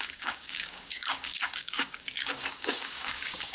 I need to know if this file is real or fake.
fake